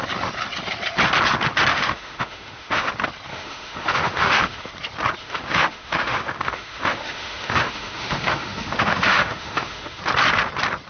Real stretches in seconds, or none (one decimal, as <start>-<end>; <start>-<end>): 0.0-1.7; 2.9-3.3; 4.7-5.2; 10.0-10.9